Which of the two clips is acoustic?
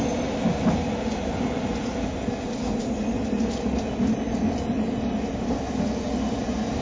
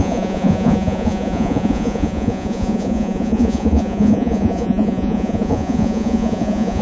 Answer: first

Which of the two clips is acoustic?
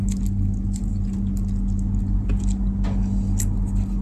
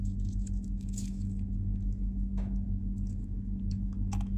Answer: first